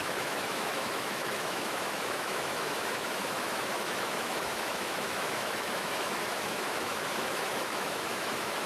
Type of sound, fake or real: fake